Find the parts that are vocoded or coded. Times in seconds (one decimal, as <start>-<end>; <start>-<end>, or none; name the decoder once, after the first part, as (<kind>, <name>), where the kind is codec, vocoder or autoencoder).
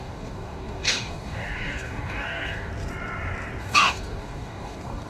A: 0.0-2.7 (codec, DAC); 3.6-5.1